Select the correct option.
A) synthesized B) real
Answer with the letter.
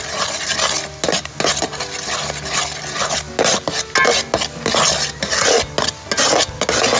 B